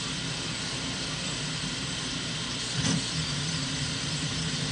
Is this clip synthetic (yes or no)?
yes